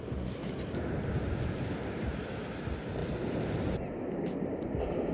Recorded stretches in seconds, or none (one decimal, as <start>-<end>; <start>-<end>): 0.0-5.1